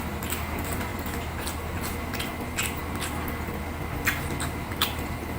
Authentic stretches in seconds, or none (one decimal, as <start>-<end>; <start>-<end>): 0.0-5.4